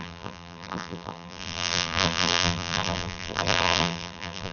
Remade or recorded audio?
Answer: remade